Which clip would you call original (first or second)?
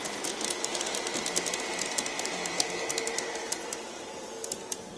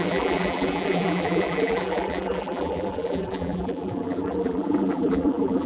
first